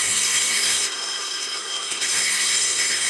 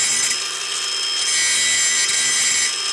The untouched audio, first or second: second